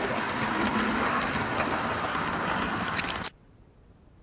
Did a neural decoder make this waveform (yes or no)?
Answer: no